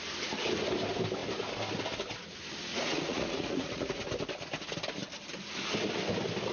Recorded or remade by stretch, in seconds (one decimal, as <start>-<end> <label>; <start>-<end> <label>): 0.0-2.7 recorded; 2.7-4.0 remade; 4.0-6.5 recorded